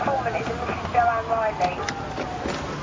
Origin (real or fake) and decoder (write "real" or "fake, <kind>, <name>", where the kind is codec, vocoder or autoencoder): real